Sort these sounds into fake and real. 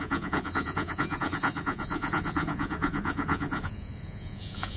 fake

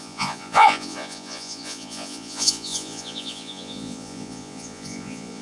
fake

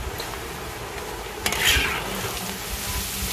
real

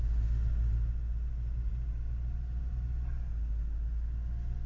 real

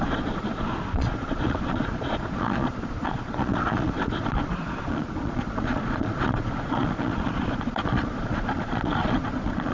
fake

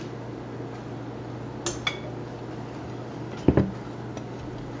real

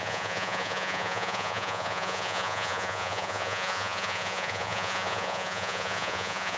fake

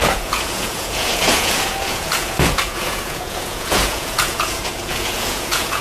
fake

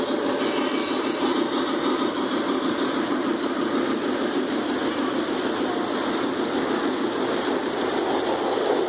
real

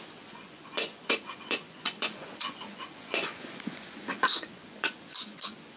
fake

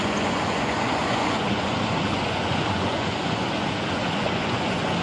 fake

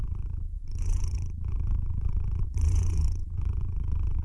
fake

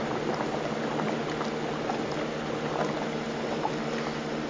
real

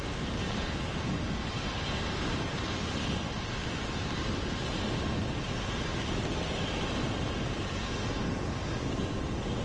real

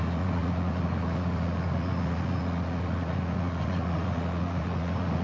fake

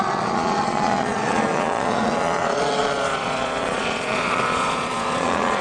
fake